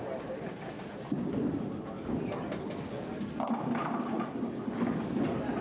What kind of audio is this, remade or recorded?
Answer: recorded